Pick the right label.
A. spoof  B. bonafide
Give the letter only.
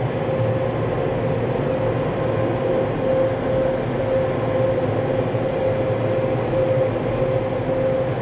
B